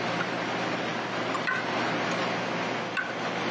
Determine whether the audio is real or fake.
real